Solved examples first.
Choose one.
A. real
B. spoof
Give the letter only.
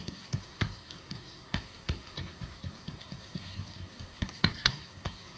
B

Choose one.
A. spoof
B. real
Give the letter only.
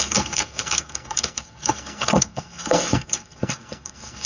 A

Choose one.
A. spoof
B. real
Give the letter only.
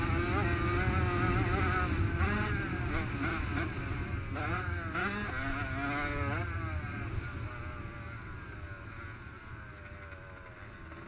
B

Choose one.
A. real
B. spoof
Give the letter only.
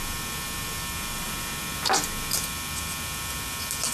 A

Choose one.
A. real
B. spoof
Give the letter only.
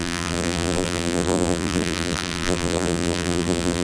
B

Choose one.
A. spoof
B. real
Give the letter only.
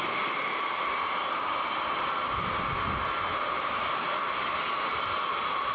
B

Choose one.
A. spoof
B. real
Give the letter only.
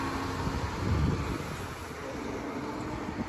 B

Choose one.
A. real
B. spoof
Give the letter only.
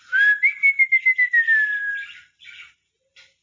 A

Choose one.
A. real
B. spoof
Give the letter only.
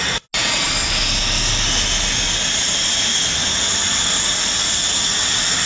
A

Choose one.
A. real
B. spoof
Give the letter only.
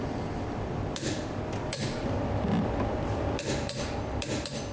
B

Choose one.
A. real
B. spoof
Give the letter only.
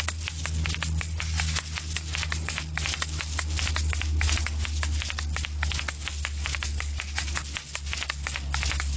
A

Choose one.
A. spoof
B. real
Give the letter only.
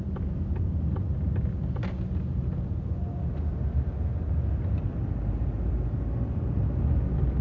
B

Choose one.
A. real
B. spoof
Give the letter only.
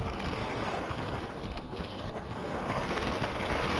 B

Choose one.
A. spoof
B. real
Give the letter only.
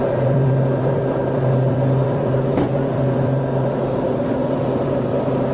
A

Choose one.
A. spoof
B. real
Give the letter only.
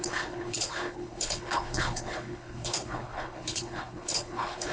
A